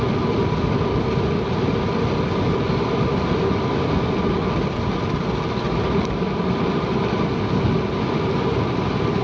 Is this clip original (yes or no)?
yes